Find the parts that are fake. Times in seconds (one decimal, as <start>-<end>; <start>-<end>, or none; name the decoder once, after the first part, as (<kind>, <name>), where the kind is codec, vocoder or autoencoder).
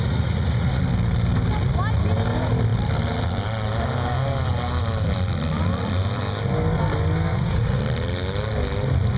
0.0-0.8 (vocoder, Vocos); 7.3-7.8